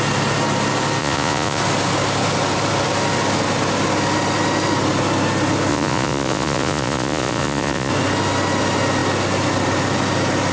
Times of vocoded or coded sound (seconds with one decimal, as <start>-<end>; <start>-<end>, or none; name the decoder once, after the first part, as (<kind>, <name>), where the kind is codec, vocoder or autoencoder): 1.0-1.6 (vocoder, Vocos); 5.7-7.9